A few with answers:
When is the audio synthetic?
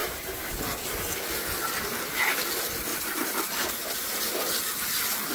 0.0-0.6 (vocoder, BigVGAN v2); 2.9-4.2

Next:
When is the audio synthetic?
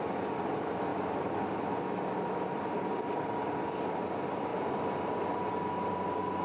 none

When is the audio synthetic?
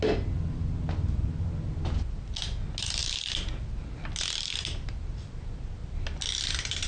none